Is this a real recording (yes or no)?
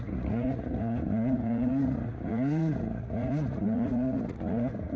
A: no